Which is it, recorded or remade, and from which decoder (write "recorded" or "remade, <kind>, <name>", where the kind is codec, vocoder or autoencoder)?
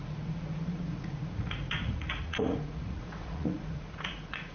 remade, vocoder, Vocos